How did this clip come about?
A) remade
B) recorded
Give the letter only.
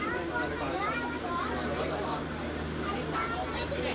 B